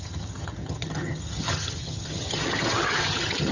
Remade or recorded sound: remade